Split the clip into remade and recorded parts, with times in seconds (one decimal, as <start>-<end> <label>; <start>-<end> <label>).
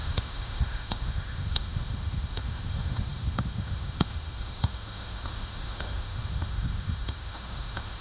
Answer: 0.0-8.0 remade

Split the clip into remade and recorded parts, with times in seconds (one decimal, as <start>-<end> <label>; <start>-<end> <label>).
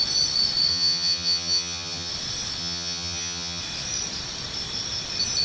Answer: 0.0-0.7 recorded; 0.7-2.1 remade; 2.1-2.6 recorded; 2.6-3.6 remade; 3.6-5.4 recorded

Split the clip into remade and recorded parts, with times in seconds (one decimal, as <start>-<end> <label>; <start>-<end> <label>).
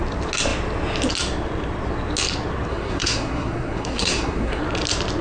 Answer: 0.0-2.7 recorded; 2.7-4.6 remade; 4.6-5.2 recorded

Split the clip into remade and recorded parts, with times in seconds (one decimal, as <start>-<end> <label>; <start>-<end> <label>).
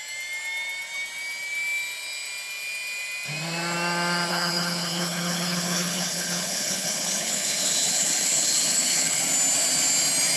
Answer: 0.0-4.3 recorded; 4.3-9.2 remade; 9.2-10.4 recorded